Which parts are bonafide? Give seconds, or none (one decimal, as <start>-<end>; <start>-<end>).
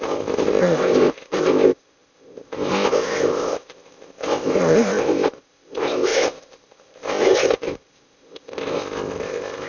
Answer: none